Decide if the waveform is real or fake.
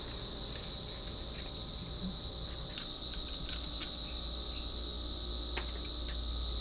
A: real